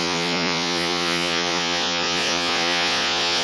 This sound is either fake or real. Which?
fake